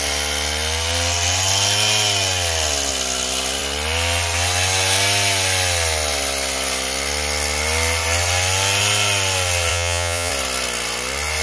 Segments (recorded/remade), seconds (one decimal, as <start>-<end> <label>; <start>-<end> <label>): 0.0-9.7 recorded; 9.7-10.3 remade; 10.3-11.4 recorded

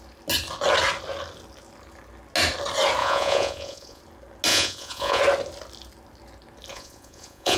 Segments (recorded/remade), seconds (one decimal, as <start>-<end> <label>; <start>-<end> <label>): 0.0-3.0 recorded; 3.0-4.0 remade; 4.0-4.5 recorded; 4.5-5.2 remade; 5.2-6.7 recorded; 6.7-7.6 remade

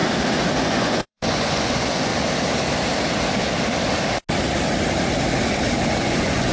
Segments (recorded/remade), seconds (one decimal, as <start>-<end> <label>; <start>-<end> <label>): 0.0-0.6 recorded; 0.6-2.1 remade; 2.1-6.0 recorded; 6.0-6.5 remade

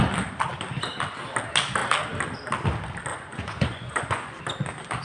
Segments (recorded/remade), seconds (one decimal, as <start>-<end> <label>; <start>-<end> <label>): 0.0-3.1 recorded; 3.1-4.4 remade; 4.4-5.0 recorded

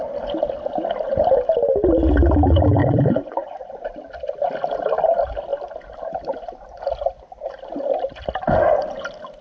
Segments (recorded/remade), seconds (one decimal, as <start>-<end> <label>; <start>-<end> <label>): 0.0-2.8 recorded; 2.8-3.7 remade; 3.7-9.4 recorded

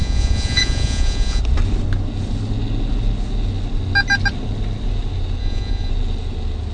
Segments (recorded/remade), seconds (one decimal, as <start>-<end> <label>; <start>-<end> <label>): 0.0-1.4 remade; 1.4-5.4 recorded; 5.4-5.9 remade; 5.9-6.7 recorded